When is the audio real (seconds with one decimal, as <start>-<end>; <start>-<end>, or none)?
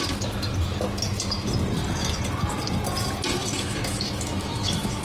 0.0-3.4